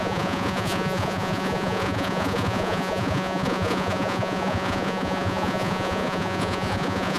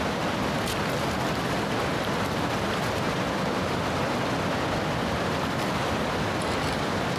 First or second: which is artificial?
first